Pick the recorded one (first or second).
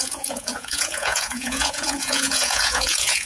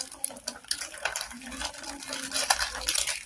second